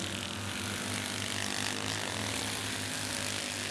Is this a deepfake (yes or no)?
no